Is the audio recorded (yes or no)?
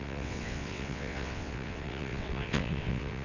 no